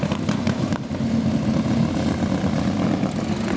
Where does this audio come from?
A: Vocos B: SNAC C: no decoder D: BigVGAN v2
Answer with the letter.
C